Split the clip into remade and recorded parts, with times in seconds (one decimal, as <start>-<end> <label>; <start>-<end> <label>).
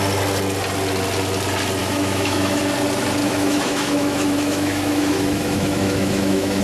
0.0-1.8 recorded; 1.8-2.6 remade; 2.6-3.2 recorded; 3.2-6.6 remade